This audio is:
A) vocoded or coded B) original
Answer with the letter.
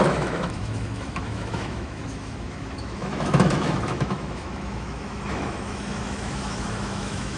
A